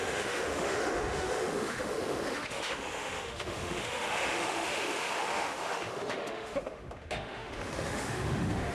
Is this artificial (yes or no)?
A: yes